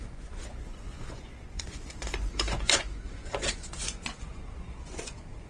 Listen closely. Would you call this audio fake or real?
fake